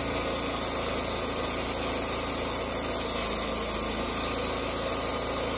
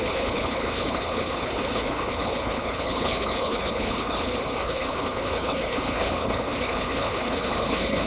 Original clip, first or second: first